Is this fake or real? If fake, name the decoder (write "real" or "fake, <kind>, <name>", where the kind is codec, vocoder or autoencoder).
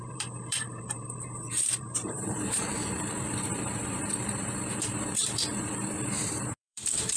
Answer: fake, vocoder, BigVGAN v2